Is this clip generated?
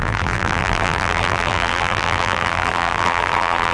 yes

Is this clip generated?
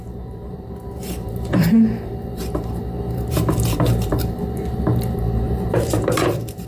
yes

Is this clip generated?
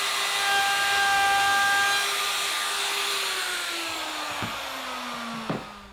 no